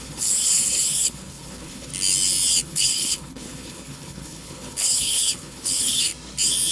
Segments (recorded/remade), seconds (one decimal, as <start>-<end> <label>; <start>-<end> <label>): 0.0-1.9 remade; 1.9-2.6 recorded; 2.6-6.1 remade; 6.1-6.7 recorded